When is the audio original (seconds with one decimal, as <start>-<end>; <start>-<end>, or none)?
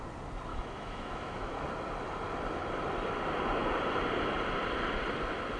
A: 0.0-0.5; 1.5-5.6